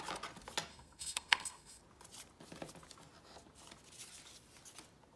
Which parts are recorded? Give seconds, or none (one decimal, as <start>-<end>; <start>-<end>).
0.0-0.7; 1.8-5.2